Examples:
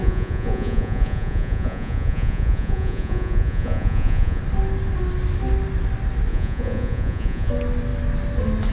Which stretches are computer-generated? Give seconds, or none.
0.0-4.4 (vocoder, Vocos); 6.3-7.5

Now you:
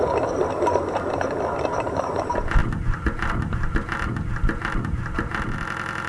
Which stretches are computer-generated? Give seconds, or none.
none

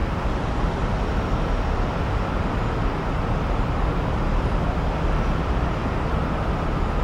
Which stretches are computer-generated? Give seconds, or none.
none

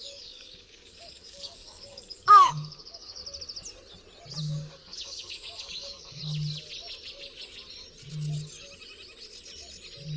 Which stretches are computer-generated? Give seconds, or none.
0.0-3.2 (codec, DAC); 4.4-6.2